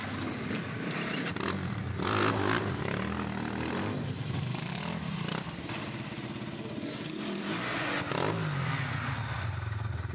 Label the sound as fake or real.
real